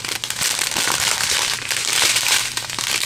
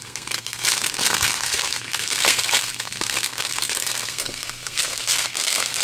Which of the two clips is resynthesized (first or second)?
second